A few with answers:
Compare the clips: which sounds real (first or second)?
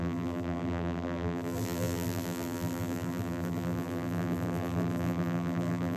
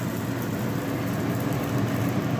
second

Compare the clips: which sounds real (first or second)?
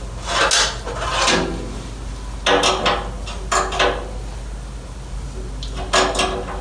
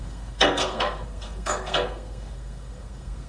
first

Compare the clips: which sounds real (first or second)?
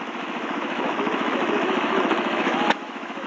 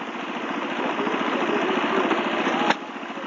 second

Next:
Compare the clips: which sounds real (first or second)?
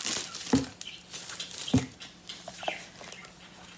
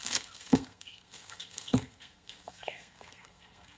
first